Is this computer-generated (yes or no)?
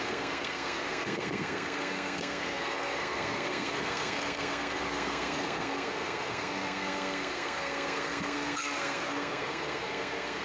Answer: yes